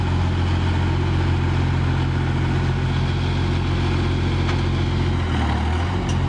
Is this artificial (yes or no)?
no